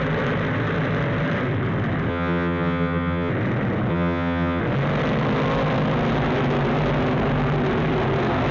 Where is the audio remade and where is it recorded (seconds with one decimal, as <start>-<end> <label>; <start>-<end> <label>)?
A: 0.0-2.1 recorded; 2.1-3.3 remade; 3.3-3.9 recorded; 3.9-4.6 remade; 4.6-8.5 recorded